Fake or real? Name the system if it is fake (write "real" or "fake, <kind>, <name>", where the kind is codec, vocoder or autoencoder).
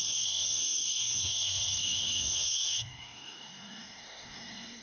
fake, codec, SNAC